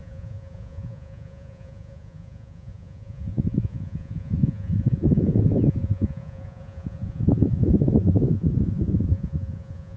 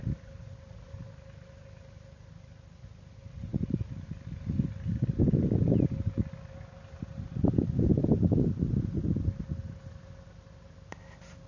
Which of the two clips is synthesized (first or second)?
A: first